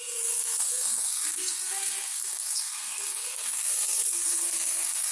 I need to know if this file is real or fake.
fake